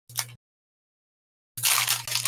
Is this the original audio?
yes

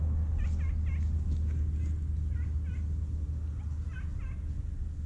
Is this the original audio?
yes